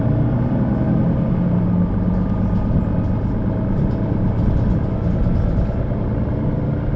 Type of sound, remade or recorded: recorded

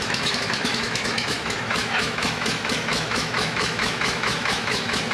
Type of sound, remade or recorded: remade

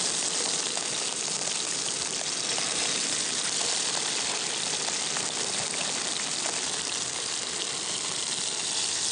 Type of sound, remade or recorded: recorded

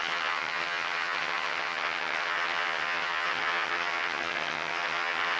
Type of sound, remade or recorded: remade